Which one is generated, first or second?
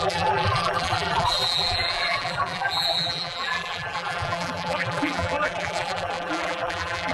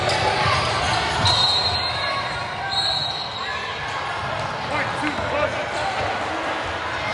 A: first